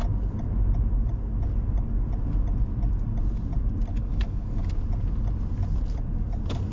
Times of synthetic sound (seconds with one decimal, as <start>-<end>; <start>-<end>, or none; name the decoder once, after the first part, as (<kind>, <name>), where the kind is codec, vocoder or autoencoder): 3.9-4.7 (codec, DAC)